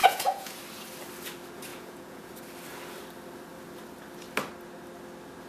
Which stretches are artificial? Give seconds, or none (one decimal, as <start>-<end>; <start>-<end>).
0.0-0.6; 1.7-2.3

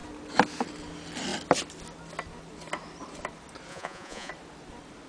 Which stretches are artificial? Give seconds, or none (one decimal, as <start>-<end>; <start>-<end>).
3.7-4.3

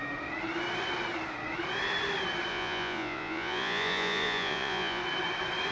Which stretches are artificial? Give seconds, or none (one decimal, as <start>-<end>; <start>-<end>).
2.5-5.0

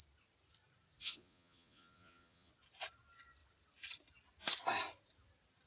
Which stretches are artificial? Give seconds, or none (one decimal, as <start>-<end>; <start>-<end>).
1.0-2.5

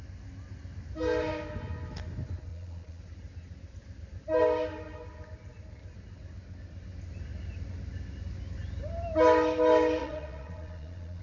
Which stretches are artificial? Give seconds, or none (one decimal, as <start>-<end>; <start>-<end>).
2.5-3.0; 10.0-11.2

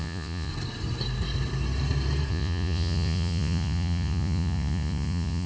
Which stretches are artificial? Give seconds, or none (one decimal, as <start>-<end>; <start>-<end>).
0.0-0.5; 2.3-5.5

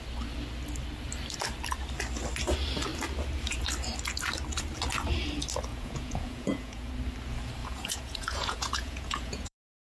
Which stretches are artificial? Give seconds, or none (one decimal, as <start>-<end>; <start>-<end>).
5.7-6.9; 7.6-9.8